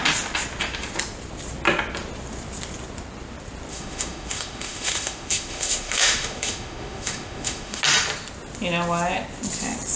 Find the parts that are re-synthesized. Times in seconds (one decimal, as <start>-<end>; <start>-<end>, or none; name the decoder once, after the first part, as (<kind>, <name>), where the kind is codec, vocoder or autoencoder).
3.7-7.8 (autoencoder, DAC-VAE)